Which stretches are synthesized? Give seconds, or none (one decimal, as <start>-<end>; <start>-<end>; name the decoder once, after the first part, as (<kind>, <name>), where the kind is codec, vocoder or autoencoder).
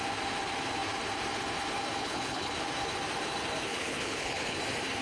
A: 2.0-2.5 (codec, HILCodec); 3.7-4.6